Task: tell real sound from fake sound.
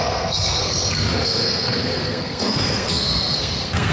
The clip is fake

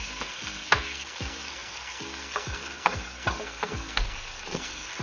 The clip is fake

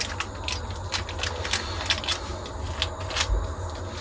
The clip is real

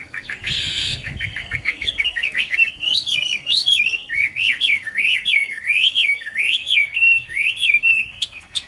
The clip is fake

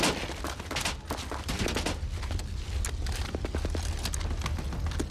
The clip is real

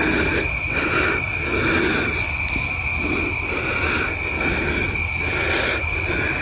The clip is real